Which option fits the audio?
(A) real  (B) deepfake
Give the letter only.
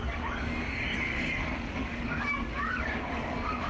B